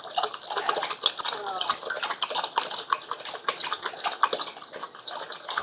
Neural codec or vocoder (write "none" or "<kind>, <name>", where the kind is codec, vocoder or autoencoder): none